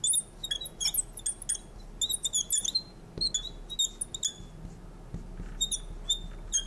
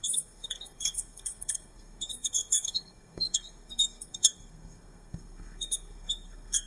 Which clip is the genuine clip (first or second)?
first